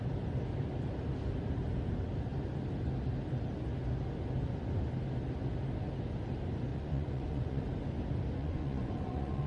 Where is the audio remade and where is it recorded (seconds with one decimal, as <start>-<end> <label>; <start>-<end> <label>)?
0.0-6.7 recorded; 6.7-7.6 remade; 7.6-8.4 recorded; 8.4-9.5 remade